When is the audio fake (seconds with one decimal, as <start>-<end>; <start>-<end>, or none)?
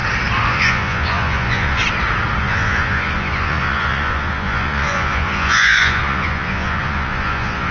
0.5-1.8; 2.4-7.7